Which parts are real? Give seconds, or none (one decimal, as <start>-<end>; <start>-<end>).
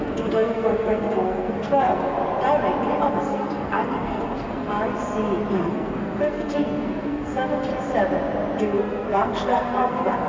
2.2-3.1; 4.7-5.6; 7.7-8.6